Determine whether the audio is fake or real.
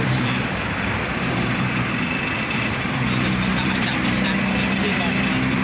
fake